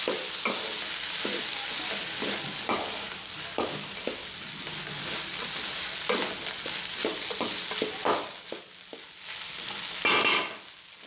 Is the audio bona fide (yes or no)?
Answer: yes